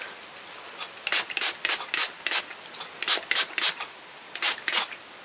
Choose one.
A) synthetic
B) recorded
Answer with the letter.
B